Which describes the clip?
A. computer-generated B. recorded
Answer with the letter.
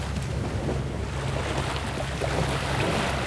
B